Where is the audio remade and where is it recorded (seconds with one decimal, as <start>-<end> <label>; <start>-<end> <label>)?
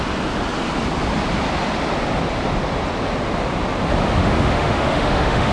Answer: 0.0-4.2 recorded; 4.2-5.5 remade